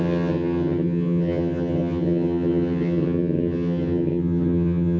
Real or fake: fake